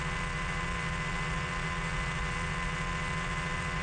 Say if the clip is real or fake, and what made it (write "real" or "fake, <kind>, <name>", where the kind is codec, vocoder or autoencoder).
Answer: fake, vocoder, Vocos